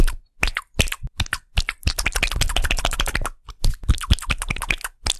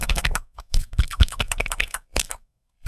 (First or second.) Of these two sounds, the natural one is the first